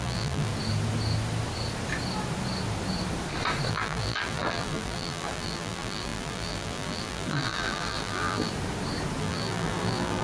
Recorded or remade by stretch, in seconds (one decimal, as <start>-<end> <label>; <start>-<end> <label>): 0.0-0.5 remade; 0.5-3.7 recorded; 3.7-8.5 remade; 8.5-9.2 recorded; 9.2-10.2 remade